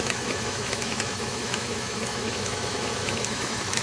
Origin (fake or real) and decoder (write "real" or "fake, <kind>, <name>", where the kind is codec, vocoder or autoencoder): fake, autoencoder, DAC-VAE